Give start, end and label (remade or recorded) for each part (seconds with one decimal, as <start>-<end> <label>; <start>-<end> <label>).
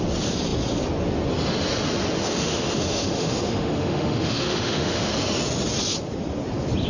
0.0-2.2 recorded; 2.2-5.1 remade; 5.1-6.9 recorded